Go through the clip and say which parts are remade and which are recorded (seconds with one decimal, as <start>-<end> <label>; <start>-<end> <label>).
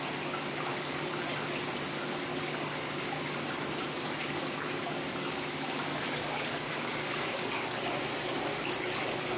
0.0-0.7 recorded; 0.7-1.2 remade; 1.2-2.3 recorded; 2.3-3.2 remade; 3.2-4.2 recorded; 4.2-7.8 remade; 7.8-9.4 recorded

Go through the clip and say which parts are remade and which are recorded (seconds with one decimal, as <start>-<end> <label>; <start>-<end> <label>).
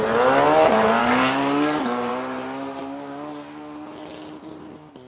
0.0-1.0 recorded; 1.0-2.1 remade; 2.1-5.1 recorded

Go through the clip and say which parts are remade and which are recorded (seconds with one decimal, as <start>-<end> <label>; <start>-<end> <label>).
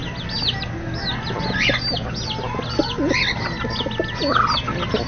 0.0-5.1 recorded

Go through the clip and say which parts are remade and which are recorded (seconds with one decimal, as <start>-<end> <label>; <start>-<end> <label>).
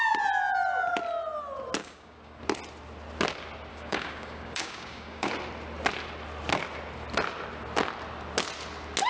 0.0-1.8 recorded; 1.8-2.4 remade; 2.4-3.7 recorded; 3.7-5.3 remade; 5.3-9.1 recorded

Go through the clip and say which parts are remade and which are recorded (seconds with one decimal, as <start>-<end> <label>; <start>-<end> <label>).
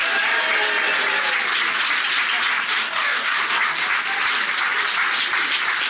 0.0-2.8 recorded; 2.8-3.4 remade; 3.4-5.9 recorded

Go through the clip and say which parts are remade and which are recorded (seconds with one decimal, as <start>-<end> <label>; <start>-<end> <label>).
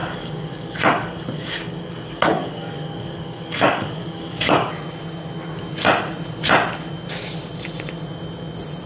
0.0-4.7 remade; 4.7-8.9 recorded